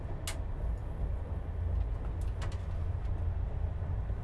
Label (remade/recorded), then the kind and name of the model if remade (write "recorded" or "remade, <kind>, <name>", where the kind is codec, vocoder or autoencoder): recorded